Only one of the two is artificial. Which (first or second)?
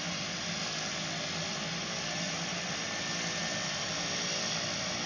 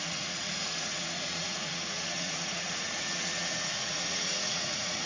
second